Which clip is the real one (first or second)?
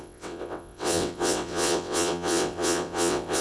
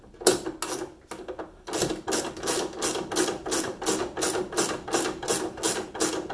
second